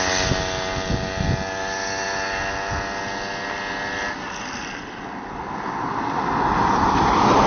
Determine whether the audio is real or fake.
real